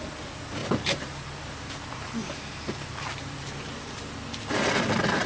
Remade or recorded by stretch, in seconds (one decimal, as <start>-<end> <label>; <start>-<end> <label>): 0.0-0.6 recorded; 0.6-3.8 remade; 3.8-5.3 recorded